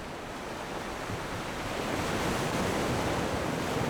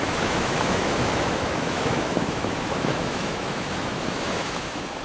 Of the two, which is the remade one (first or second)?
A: second